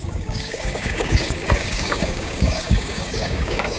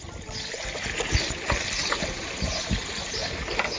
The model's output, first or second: first